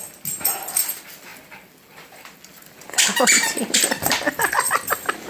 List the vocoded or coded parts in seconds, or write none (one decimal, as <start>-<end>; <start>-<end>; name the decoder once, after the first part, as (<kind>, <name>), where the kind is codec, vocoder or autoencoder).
1.3-4.5 (vocoder, BigVGAN v2)